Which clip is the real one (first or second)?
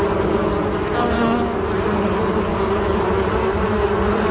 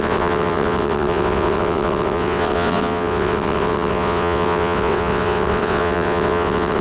first